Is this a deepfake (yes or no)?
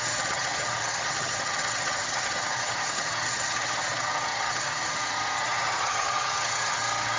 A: yes